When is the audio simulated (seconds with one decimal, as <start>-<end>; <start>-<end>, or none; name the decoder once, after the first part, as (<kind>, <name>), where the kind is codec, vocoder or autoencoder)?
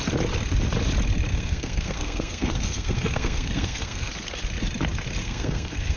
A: 1.3-4.1 (codec, SNAC); 5.2-6.0